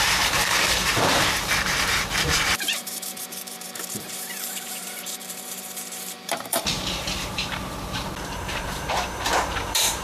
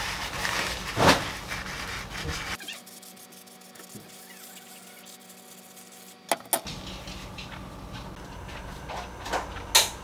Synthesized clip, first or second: first